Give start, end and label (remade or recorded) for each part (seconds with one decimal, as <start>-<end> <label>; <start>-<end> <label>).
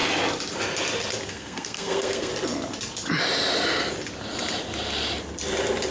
0.0-1.3 recorded; 1.3-2.3 remade; 2.3-5.9 recorded